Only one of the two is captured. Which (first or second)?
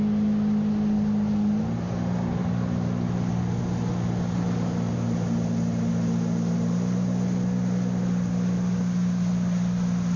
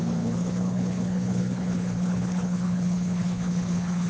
first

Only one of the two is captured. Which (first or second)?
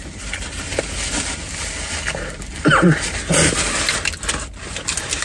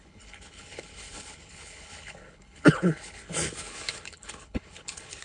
first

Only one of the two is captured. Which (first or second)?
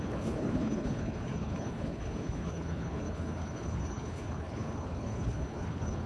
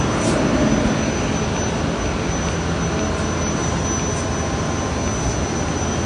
second